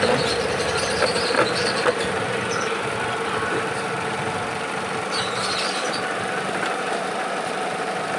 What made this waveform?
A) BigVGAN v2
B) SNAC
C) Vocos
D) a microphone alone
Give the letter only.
A